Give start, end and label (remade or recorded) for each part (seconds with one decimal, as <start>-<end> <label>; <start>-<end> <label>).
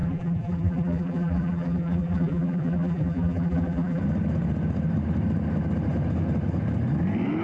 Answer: 0.0-4.0 remade; 4.0-7.4 recorded